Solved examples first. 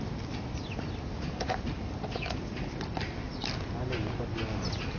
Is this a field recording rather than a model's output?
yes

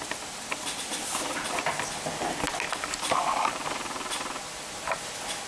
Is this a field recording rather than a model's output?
yes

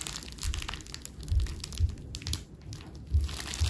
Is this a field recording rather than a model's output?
yes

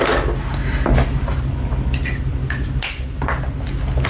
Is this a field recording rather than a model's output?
yes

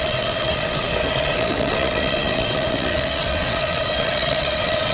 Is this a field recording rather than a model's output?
no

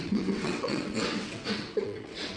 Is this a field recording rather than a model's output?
no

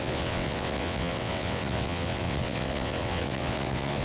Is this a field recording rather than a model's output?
no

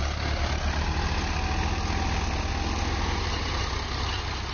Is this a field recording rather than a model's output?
yes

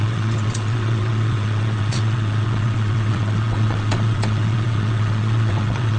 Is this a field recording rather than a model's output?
no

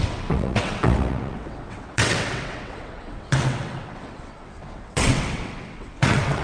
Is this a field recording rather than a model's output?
no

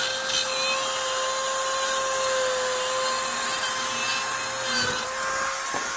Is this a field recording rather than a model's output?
yes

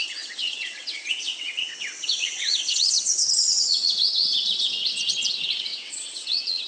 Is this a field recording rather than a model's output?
no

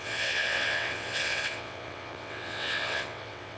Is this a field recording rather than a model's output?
no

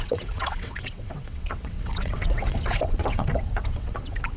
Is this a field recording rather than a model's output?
no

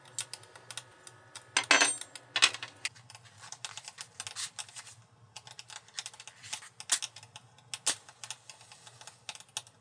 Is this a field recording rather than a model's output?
yes